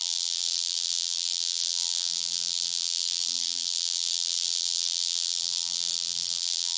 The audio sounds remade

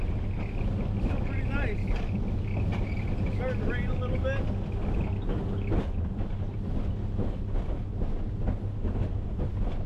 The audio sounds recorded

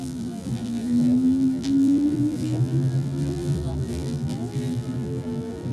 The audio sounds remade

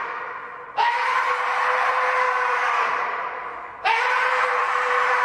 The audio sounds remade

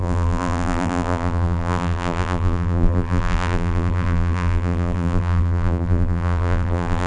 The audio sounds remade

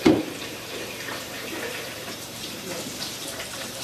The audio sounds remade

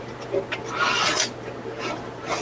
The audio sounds recorded